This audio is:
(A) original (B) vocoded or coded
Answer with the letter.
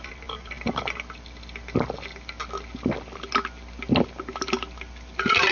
A